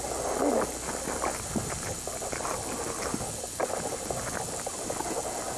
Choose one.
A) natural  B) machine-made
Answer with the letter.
A